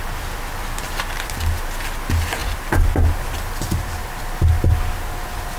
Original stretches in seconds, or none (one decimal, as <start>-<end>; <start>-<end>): 0.0-5.6